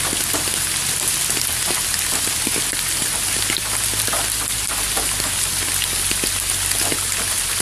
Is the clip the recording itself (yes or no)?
yes